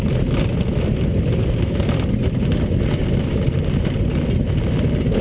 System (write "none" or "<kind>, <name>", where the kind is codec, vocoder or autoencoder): none